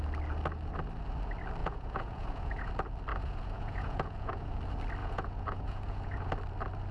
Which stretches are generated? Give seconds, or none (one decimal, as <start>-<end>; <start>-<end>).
1.6-2.7; 3.1-4.6; 5.0-6.3